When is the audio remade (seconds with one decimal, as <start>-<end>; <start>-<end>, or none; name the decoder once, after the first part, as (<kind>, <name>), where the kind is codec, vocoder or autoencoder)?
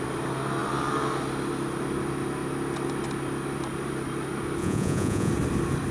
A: 4.6-5.3 (vocoder, Vocos)